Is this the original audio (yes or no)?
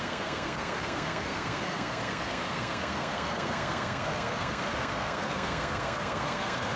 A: no